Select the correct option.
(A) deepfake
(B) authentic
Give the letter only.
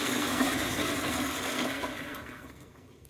A